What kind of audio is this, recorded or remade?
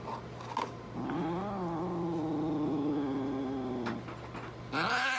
recorded